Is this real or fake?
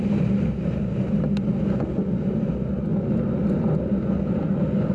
real